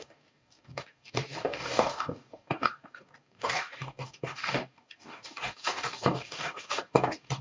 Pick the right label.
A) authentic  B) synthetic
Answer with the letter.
B